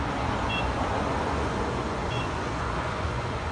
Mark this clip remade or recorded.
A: remade